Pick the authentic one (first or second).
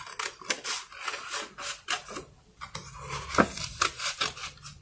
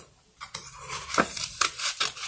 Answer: first